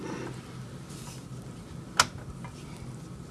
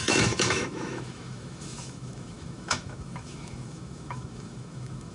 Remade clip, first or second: second